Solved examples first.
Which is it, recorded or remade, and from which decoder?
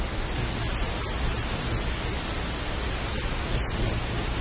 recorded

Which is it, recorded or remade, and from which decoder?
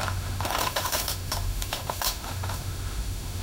remade, autoencoder, DAC-VAE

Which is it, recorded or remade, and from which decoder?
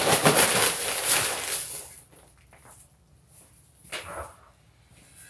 recorded